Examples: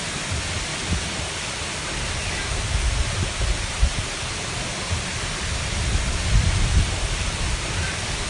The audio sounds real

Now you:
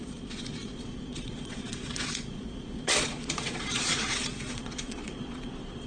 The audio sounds fake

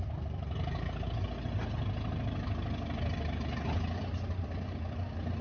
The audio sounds real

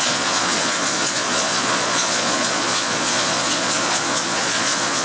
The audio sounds fake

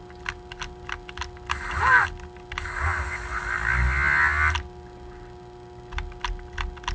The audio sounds real